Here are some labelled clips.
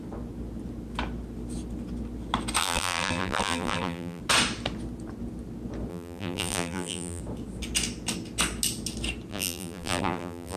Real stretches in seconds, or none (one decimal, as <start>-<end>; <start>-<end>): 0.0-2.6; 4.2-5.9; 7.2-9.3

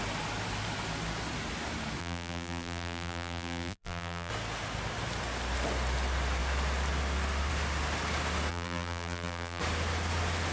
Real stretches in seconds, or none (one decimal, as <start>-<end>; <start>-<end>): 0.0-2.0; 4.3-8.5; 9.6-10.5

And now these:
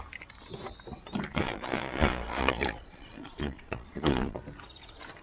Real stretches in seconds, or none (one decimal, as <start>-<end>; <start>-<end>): 0.0-1.3; 4.4-5.2